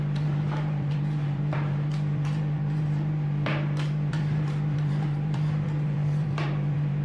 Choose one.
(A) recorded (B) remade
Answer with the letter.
B